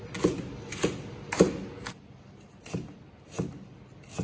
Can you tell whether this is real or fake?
real